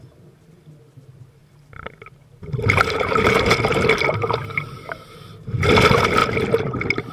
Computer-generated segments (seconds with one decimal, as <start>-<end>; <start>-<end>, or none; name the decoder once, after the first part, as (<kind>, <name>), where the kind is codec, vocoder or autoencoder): none